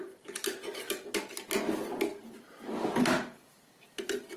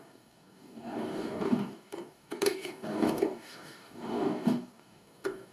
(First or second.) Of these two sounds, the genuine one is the first